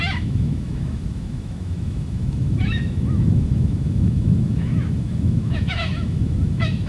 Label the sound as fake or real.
fake